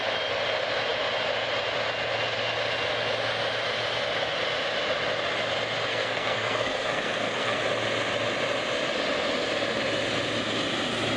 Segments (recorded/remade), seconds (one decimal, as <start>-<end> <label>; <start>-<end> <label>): 0.0-5.9 recorded; 5.9-7.6 remade; 7.6-11.2 recorded